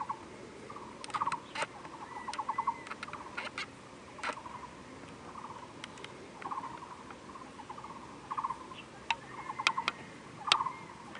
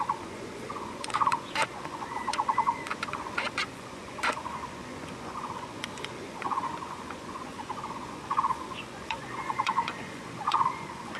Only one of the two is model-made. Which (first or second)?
second